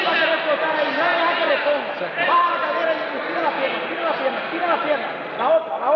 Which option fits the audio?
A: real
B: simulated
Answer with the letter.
A